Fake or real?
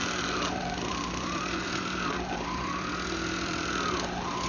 fake